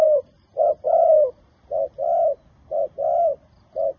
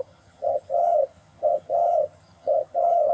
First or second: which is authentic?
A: first